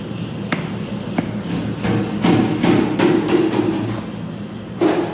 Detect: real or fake real